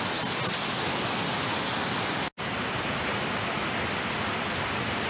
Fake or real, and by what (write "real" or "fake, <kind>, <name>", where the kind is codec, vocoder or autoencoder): real